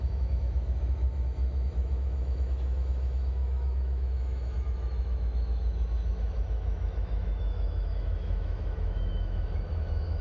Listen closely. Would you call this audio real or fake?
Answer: fake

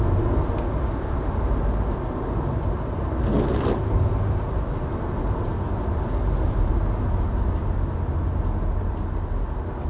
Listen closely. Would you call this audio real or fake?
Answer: real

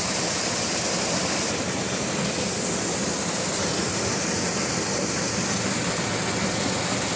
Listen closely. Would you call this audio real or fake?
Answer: real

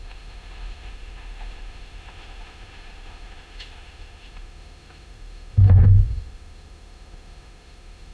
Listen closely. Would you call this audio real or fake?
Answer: fake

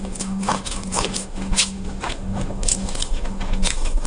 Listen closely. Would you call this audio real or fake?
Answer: fake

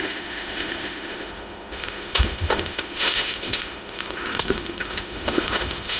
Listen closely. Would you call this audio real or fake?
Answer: fake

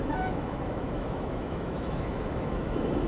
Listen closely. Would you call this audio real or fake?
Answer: fake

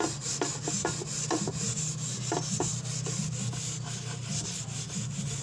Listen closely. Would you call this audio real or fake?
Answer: real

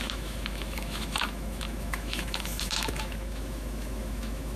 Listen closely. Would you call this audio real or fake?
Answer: fake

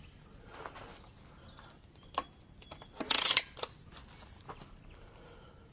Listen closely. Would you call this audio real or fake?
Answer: real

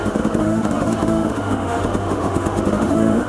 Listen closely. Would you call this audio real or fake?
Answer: fake